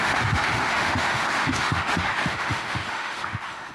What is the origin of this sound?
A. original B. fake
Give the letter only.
B